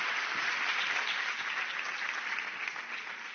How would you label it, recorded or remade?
recorded